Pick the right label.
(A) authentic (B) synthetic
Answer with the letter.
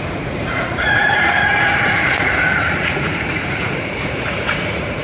B